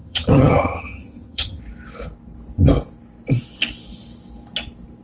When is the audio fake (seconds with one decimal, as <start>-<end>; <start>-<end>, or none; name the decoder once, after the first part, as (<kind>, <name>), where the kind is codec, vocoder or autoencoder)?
0.0-1.6 (vocoder, HiFi-GAN)